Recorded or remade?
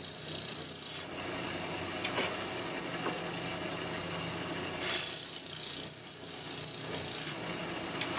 recorded